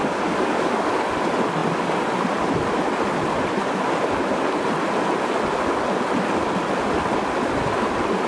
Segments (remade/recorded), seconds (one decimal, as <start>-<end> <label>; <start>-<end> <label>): 0.0-1.1 remade; 1.1-8.3 recorded